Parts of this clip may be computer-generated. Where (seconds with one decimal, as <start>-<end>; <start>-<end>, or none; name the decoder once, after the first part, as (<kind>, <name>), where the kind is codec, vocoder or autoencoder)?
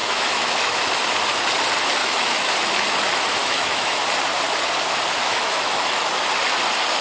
0.0-0.9 (autoencoder, DAC-VAE); 2.0-2.5; 3.4-4.0; 5.2-6.1